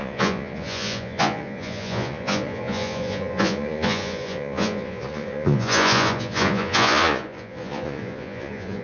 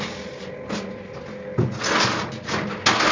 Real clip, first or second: second